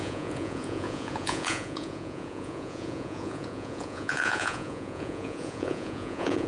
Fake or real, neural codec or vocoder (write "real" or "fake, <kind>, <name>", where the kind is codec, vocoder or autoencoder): fake, vocoder, Vocos